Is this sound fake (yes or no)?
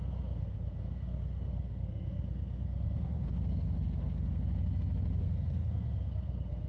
yes